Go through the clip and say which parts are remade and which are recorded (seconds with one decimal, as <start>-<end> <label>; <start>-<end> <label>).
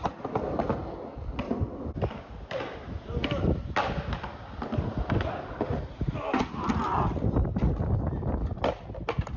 0.0-9.4 recorded